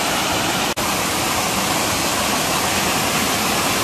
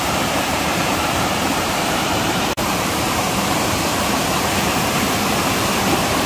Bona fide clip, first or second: first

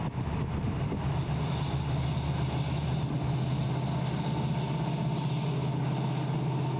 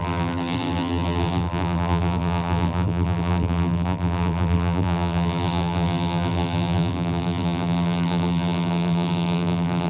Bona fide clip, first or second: first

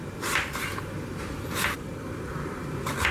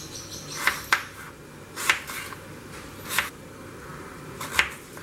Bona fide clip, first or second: second